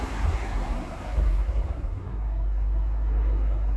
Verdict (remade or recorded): remade